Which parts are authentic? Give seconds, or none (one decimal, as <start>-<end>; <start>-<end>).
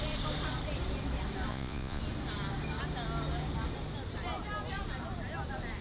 0.0-1.5; 2.0-5.8